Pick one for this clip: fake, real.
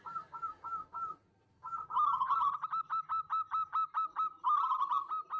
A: real